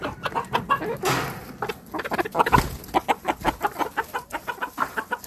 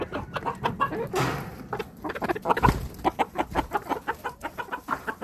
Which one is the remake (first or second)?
second